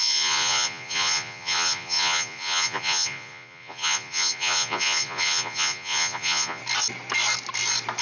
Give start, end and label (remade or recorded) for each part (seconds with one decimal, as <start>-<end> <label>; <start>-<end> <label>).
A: 0.0-6.6 remade; 6.6-8.0 recorded